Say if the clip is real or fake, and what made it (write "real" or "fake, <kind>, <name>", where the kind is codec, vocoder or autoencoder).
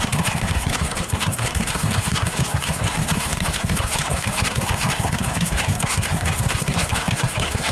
fake, codec, SNAC